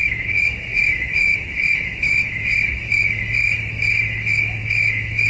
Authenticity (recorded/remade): remade